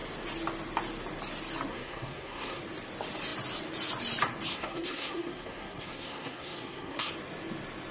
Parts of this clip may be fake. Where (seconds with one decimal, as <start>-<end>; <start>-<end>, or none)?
1.7-2.6; 4.5-7.1